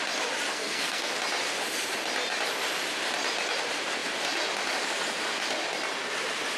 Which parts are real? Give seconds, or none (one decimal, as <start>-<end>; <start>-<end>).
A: 0.0-0.5; 1.1-6.6